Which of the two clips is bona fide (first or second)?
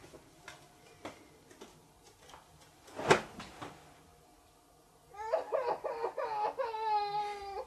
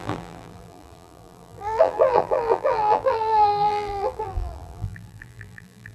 first